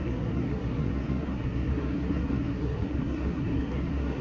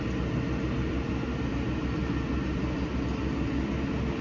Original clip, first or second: second